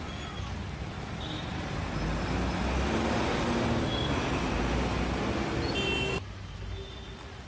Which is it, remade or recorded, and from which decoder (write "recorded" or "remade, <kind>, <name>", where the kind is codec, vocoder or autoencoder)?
recorded